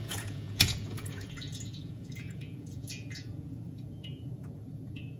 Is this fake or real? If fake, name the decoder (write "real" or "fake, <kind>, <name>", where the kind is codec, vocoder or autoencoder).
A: fake, vocoder, Vocos